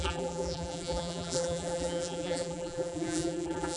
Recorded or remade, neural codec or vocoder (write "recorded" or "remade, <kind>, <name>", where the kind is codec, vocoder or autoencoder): remade, vocoder, BigVGAN v2